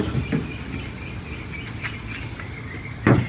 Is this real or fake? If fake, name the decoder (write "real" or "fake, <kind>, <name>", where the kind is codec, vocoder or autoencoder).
real